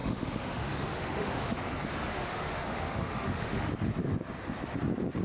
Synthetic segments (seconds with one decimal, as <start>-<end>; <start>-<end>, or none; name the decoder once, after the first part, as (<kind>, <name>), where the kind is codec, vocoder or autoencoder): 0.0-1.6 (autoencoder, DAC-VAE); 2.1-3.7